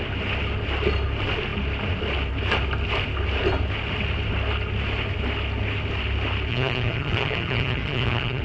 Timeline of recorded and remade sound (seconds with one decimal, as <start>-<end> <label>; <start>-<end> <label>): 0.0-6.5 recorded; 6.5-8.4 remade